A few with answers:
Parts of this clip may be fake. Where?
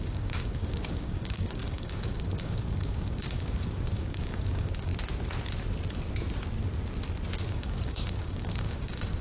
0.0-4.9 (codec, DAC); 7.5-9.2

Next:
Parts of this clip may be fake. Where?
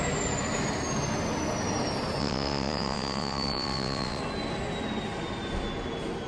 2.2-4.2 (vocoder, WaveNeXt)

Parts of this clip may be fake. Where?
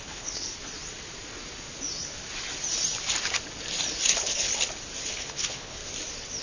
0.0-0.6 (codec, HILCodec); 4.1-4.5; 5.1-5.8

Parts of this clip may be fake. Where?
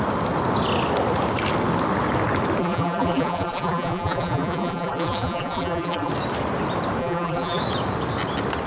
2.6-6.1 (vocoder, BigVGAN v2); 7.0-7.6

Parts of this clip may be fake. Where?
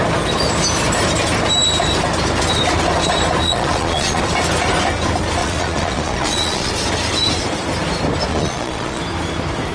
3.4-4.2 (vocoder, Vocos); 5.4-6.7; 8.3-9.0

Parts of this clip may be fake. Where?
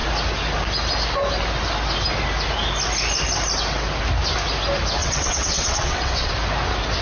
5.0-6.3 (vocoder, WaveNeXt)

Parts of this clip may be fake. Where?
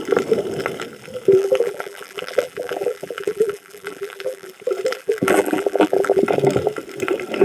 1.4-4.5 (vocoder, BigVGAN v2); 4.9-6.2